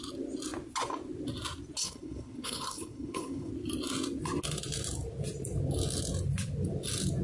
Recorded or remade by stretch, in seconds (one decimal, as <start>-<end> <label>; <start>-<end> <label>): 0.0-1.8 recorded; 1.8-3.5 remade; 3.5-7.2 recorded